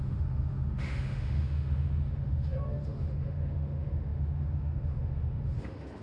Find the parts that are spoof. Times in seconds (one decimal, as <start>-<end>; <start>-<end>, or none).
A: 0.0-6.0

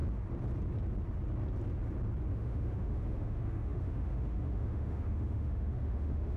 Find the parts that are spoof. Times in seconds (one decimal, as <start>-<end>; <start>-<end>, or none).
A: 2.3-6.4